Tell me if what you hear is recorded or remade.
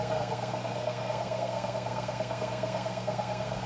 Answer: remade